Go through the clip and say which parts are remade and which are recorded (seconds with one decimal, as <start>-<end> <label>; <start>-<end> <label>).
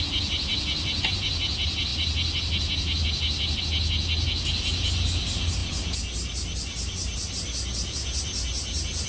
0.0-9.1 recorded